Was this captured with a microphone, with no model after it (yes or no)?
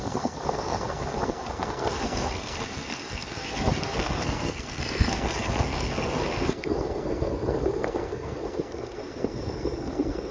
no